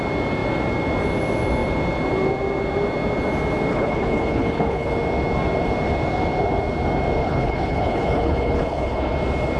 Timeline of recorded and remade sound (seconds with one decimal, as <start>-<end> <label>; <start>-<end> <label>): 0.0-3.7 recorded; 3.7-4.9 remade; 4.9-7.2 recorded; 7.2-9.0 remade; 9.0-9.6 recorded